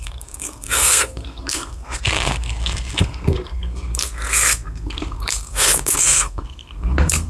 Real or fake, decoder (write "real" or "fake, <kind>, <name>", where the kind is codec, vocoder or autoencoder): fake, codec, SNAC